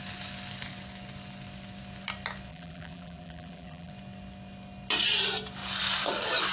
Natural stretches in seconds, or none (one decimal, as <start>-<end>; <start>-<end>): 0.0-2.5; 3.9-6.5

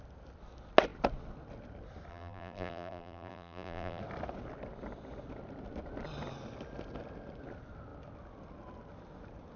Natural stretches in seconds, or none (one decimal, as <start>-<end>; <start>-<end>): 0.0-2.1; 4.0-9.6

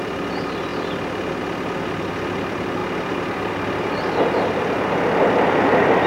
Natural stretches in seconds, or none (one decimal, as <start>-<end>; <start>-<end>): 0.0-0.7; 1.4-6.1

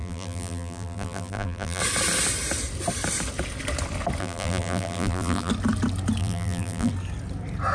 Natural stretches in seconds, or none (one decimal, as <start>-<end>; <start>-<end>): 1.8-4.2; 5.5-6.2; 6.9-7.7

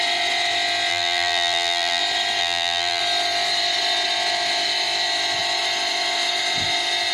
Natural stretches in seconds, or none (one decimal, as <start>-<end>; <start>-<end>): 0.0-0.9; 2.0-2.4; 3.0-7.1

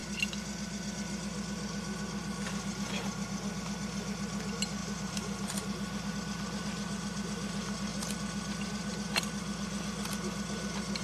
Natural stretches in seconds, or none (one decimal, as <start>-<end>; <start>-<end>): 0.0-4.8; 6.1-11.0